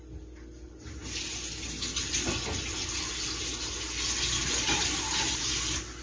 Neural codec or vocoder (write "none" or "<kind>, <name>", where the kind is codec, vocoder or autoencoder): none